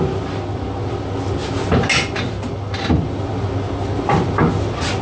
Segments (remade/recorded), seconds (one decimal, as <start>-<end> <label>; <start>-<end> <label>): 0.0-5.0 recorded